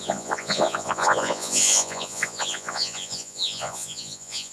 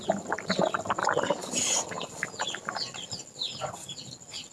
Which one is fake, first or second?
first